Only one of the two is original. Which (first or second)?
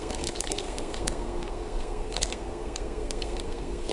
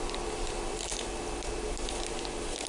second